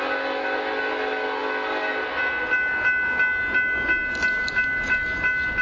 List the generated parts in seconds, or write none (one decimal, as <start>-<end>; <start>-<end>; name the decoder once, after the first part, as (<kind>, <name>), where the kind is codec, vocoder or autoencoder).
none